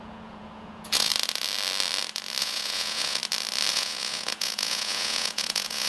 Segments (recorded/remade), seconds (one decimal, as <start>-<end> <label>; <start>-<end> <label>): 0.0-1.1 remade; 1.1-2.4 recorded; 2.4-3.2 remade; 3.2-3.7 recorded; 3.7-5.9 remade